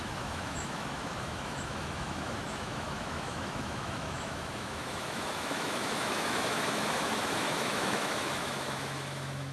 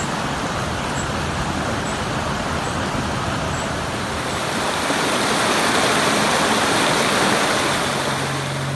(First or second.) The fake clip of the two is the first